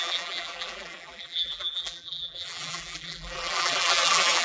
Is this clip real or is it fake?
fake